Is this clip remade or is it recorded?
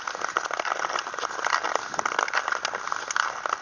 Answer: recorded